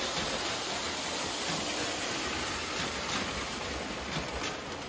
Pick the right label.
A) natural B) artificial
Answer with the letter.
A